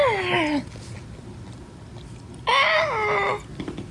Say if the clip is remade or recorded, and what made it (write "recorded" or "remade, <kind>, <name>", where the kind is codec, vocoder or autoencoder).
recorded